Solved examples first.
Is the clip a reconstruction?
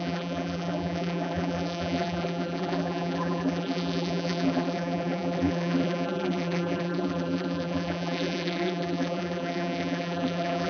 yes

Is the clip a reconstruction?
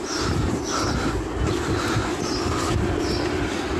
no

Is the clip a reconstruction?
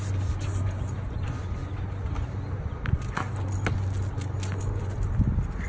no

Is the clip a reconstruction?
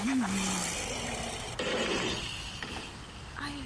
no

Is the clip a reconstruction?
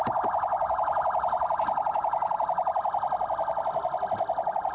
no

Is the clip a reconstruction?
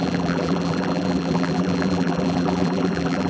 yes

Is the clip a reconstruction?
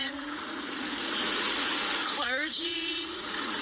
yes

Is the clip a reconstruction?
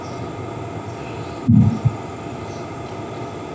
no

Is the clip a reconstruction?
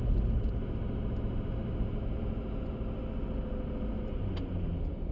no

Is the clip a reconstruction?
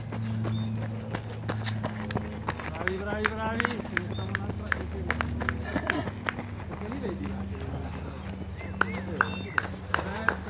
no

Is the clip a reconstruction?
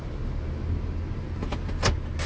no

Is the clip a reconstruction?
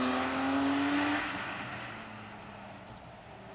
no